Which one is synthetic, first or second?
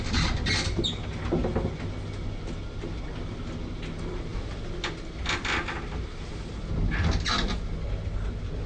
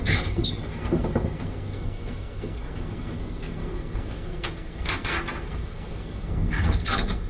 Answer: second